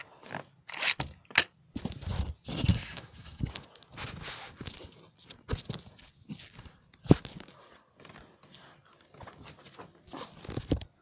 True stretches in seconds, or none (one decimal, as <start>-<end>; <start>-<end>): 0.0-2.7; 3.4-11.0